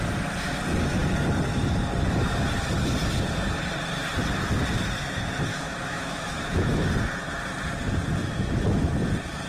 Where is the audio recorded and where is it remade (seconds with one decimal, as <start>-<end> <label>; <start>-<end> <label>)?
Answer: 0.0-5.5 recorded; 5.5-6.9 remade; 6.9-8.2 recorded; 8.2-8.9 remade; 8.9-9.5 recorded